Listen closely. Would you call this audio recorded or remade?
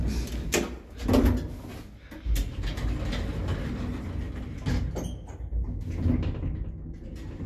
recorded